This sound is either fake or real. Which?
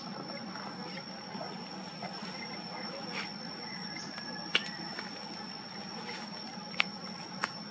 real